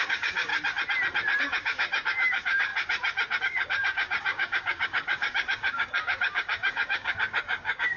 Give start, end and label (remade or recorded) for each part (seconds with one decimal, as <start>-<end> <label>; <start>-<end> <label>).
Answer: 0.0-0.5 remade; 0.5-1.4 recorded; 1.4-2.7 remade; 2.7-3.4 recorded; 3.4-8.0 remade